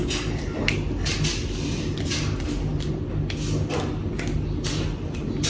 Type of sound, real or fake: real